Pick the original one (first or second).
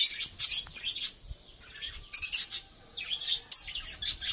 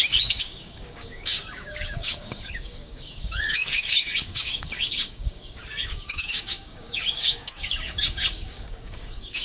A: first